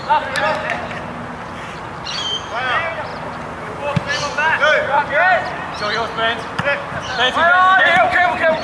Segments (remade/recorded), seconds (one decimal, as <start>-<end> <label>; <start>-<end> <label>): 0.0-8.6 recorded